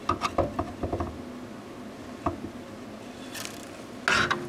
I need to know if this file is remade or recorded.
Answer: recorded